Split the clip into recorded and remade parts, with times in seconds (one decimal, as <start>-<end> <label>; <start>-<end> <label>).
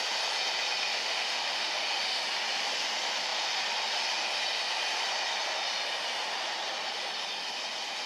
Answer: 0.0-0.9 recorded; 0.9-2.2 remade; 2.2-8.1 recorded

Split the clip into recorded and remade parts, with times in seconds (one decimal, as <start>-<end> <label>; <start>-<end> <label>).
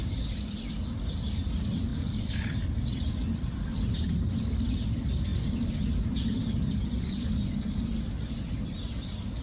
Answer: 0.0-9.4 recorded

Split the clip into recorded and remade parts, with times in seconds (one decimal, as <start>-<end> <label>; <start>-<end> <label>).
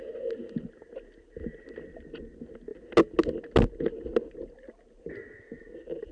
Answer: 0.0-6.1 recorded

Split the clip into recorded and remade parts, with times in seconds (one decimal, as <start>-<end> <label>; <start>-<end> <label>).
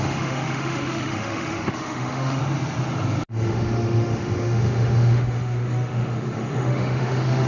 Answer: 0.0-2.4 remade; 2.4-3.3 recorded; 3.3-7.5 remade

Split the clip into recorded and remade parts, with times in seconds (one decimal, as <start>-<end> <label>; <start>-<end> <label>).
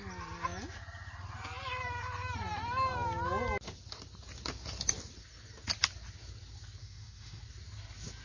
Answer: 0.0-6.8 recorded; 6.8-7.4 remade; 7.4-8.2 recorded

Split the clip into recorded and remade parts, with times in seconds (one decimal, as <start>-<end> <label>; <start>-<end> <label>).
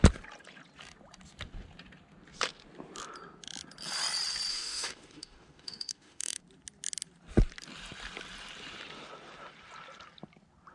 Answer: 0.0-4.5 recorded; 4.5-6.4 remade; 6.4-10.7 recorded